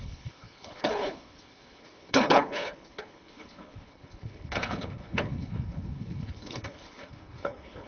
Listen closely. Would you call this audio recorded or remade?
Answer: remade